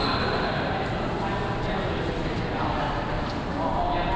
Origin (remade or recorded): recorded